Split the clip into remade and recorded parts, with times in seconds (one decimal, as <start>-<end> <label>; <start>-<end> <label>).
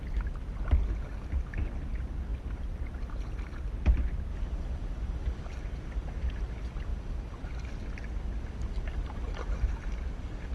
0.0-2.3 recorded; 2.3-3.1 remade; 3.1-6.9 recorded; 6.9-7.7 remade; 7.7-10.5 recorded